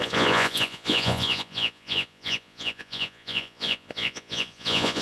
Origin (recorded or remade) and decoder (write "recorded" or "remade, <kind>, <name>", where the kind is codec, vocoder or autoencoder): remade, vocoder, Vocos